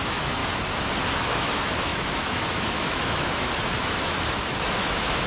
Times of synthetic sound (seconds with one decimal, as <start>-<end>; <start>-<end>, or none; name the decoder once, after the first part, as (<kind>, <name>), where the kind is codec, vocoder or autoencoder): 0.0-0.4 (autoencoder, DAC-VAE); 1.3-5.3